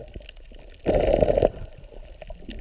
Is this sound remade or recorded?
recorded